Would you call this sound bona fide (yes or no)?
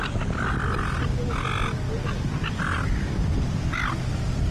yes